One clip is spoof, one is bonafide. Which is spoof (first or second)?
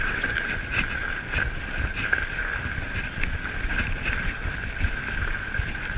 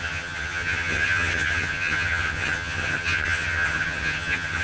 second